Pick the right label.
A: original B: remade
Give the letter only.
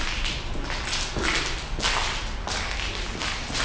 A